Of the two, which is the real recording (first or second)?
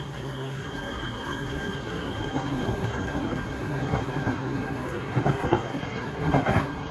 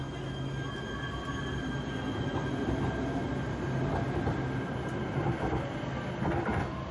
second